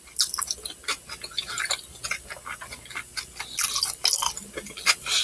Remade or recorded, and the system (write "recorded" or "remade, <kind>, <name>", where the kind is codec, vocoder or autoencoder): recorded